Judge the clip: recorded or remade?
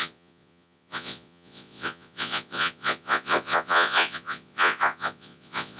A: remade